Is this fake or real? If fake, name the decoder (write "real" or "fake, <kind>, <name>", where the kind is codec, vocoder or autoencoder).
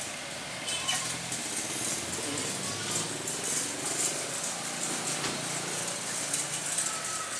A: real